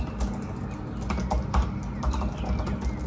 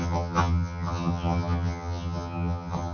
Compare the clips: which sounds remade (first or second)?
second